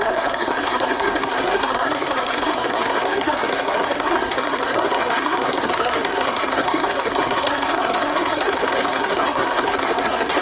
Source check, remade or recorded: remade